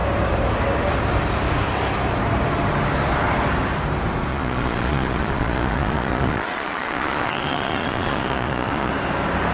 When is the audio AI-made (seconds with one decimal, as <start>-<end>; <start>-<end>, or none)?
4.3-8.9